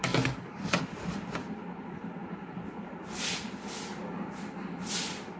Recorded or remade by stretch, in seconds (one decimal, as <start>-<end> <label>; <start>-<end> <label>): 0.0-0.8 remade; 0.8-5.4 recorded